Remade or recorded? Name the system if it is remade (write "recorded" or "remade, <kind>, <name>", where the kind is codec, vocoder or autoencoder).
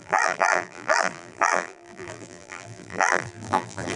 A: remade, vocoder, BigVGAN v2